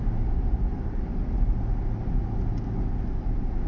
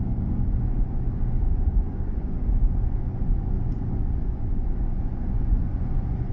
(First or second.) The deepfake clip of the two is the second